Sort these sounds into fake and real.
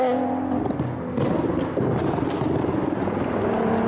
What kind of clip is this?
real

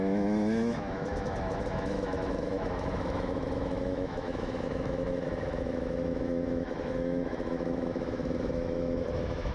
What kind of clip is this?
fake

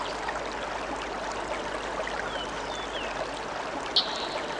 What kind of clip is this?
real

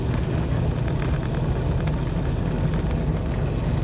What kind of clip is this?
real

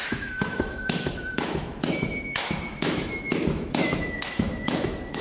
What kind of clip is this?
fake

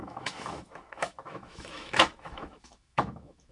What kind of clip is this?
fake